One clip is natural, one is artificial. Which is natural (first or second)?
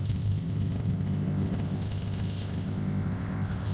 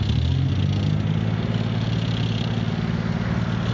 second